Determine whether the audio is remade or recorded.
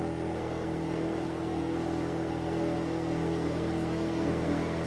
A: remade